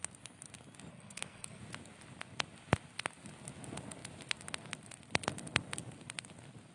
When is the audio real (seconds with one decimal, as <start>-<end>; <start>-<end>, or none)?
0.0-0.9; 1.6-6.7